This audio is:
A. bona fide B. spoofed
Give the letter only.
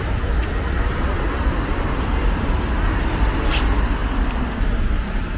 A